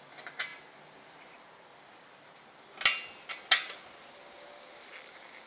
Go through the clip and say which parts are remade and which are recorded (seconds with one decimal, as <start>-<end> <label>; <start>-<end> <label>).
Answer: 0.0-5.5 recorded